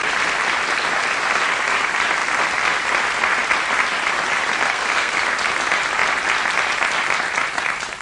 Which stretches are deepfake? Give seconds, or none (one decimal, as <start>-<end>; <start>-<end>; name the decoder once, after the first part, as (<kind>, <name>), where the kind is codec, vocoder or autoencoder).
4.5-5.2 (codec, SNAC)